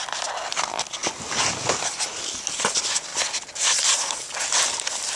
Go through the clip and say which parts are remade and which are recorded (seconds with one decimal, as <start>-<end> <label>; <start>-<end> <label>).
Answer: 0.0-5.2 recorded